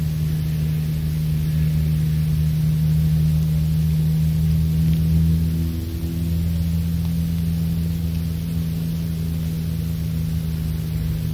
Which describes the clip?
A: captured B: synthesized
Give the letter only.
A